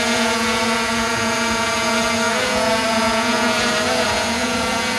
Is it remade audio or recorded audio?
remade